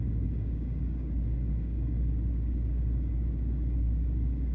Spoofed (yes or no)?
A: yes